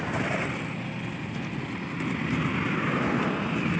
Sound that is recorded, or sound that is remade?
recorded